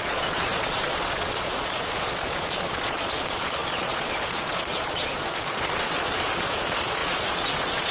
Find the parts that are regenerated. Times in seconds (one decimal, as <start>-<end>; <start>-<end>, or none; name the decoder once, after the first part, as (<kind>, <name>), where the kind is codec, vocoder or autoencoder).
0.0-7.9 (vocoder, Vocos)